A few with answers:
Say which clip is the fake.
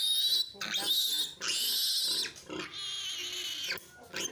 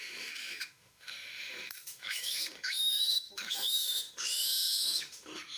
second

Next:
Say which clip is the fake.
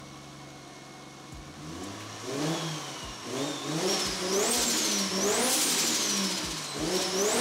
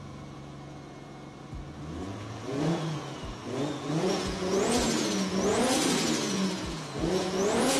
second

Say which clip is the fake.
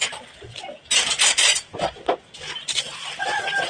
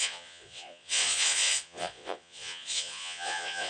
second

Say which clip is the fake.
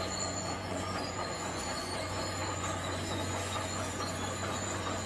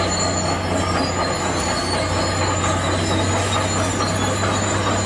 first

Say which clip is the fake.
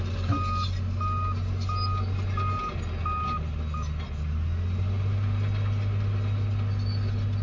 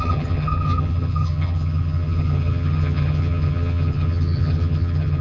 second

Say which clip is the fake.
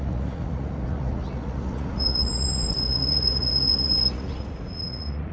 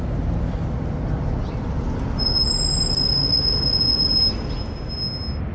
first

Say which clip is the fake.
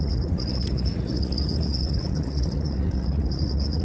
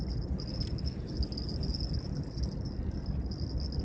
first